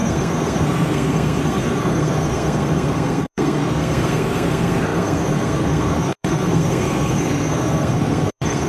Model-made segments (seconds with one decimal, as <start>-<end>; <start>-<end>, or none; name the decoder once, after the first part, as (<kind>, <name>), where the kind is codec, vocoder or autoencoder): 0.0-8.7 (codec, SNAC)